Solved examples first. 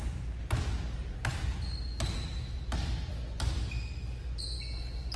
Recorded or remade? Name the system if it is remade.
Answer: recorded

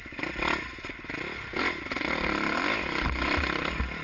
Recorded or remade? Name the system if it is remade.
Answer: recorded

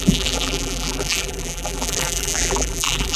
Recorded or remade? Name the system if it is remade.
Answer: remade, vocoder, BigVGAN v2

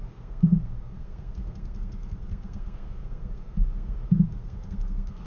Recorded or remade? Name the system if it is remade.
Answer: remade, codec, SNAC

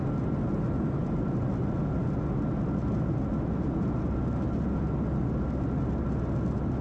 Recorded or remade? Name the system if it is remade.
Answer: recorded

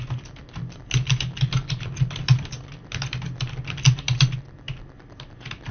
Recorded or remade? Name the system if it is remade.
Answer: recorded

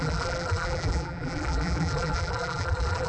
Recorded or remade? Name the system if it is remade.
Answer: remade, vocoder, BigVGAN v2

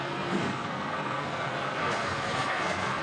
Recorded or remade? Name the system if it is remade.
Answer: remade, codec, SNAC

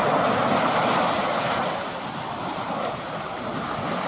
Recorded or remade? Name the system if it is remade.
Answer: recorded